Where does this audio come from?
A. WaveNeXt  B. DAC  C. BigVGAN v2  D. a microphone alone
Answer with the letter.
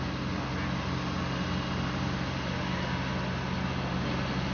D